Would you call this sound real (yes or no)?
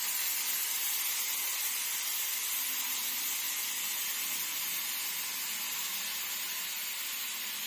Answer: yes